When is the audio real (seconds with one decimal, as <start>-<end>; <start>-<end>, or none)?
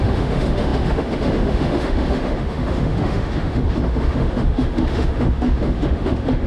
none